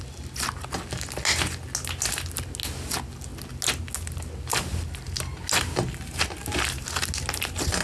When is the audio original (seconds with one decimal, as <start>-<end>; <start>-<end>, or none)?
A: 0.0-7.8